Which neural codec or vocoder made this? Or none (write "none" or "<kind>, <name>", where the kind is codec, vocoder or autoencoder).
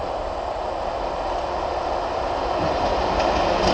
none